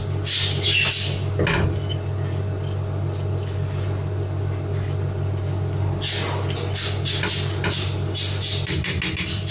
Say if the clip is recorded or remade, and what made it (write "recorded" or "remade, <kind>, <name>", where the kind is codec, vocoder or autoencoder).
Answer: recorded